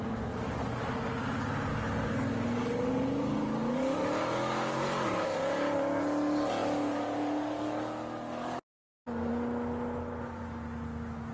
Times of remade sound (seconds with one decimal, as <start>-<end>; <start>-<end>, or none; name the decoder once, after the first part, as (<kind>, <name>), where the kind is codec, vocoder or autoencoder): 1.7-6.0 (codec, DAC); 6.6-9.3